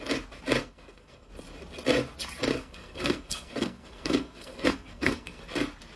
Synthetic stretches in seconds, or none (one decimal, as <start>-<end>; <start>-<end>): 0.6-1.3; 2.5-5.4